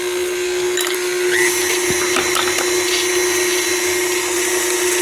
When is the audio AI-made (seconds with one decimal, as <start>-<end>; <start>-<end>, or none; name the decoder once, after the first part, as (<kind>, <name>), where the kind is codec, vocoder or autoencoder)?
none